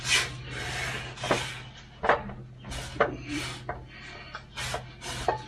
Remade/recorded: recorded